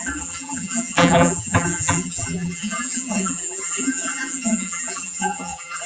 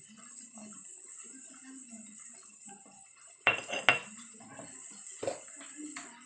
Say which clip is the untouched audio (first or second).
second